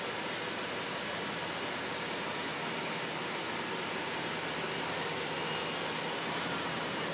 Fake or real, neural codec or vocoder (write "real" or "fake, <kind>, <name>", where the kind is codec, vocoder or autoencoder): real